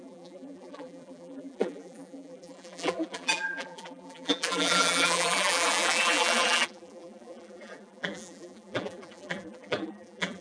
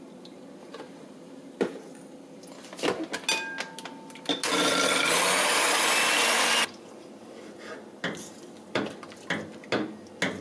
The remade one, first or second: first